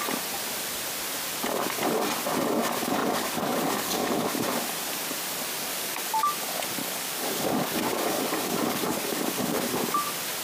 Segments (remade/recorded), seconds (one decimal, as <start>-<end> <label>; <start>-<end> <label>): 0.0-3.0 recorded; 3.0-4.3 remade; 4.3-5.7 recorded; 5.7-6.3 remade; 6.3-6.8 recorded; 6.8-9.6 remade; 9.6-10.4 recorded